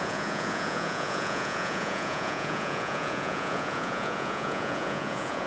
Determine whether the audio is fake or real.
fake